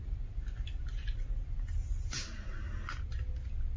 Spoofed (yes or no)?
no